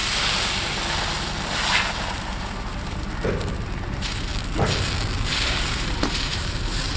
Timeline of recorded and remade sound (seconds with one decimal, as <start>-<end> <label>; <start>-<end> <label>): 0.0-1.9 recorded; 1.9-4.3 remade; 4.3-5.3 recorded; 5.3-7.0 remade